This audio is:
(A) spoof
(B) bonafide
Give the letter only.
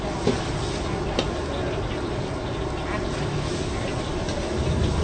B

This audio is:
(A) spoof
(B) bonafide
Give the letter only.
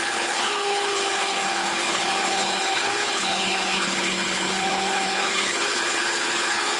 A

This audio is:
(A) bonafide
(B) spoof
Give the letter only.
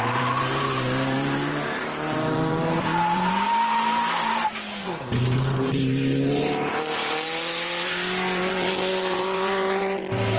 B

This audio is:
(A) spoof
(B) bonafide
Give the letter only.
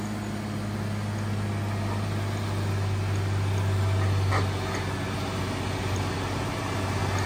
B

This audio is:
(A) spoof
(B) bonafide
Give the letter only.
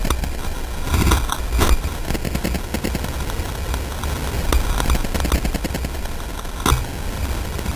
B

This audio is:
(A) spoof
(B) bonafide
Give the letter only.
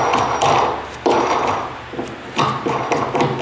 B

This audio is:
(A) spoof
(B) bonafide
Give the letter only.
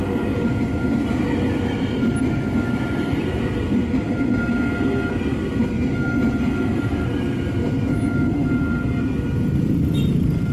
B